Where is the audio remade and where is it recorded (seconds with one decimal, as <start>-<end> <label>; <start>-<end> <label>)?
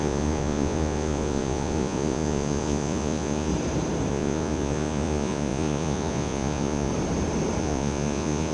0.0-3.5 remade; 3.5-4.1 recorded; 4.1-6.9 remade; 6.9-7.6 recorded; 7.6-8.5 remade